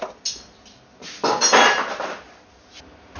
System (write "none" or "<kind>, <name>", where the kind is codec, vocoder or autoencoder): none